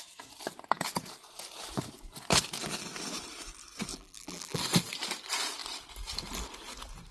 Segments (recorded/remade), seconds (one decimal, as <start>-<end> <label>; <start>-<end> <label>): 0.0-3.9 recorded; 3.9-4.6 remade; 4.6-7.1 recorded